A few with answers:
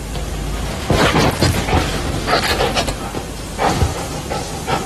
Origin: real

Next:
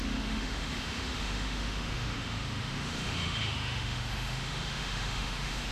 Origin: fake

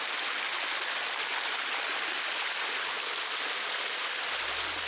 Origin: real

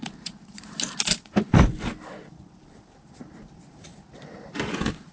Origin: real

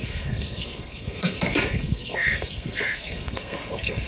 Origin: fake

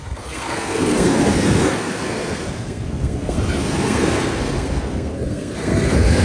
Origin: fake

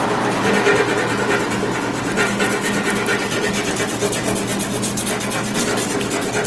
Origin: real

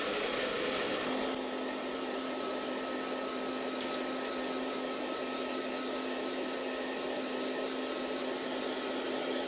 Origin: real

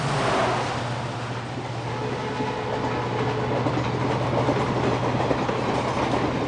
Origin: real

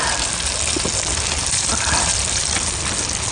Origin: real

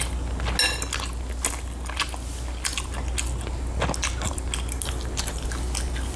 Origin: real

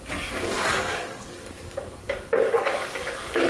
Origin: fake